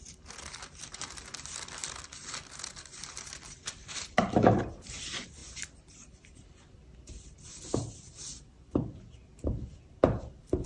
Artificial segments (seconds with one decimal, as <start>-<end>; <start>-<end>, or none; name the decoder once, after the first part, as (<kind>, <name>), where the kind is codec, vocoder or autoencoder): 0.0-1.8 (vocoder, BigVGAN v2); 3.1-10.7